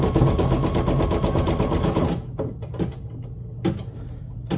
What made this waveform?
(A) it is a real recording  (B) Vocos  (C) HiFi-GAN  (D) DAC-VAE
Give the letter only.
A